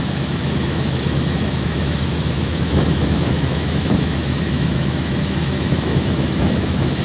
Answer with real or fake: fake